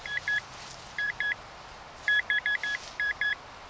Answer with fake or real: fake